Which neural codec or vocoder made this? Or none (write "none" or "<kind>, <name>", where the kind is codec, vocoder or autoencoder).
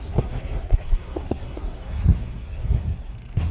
codec, SNAC